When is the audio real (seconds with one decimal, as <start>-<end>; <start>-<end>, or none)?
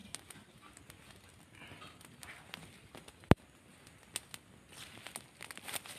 0.0-6.0